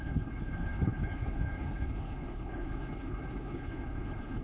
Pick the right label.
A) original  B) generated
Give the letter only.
B